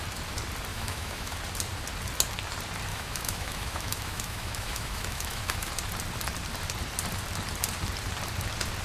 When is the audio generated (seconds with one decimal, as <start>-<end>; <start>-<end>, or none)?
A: 0.7-1.4; 2.9-5.7

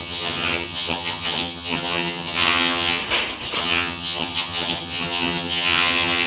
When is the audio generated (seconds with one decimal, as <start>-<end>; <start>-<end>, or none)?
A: 0.0-3.0; 3.6-6.3

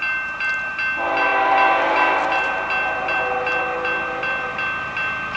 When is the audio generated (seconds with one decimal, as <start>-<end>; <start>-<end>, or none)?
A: none

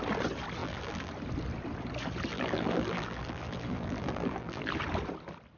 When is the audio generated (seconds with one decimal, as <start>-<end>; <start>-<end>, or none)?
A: 0.6-1.1; 2.3-4.7

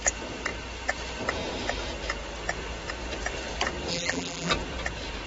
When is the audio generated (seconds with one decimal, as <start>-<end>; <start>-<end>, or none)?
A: 3.9-4.5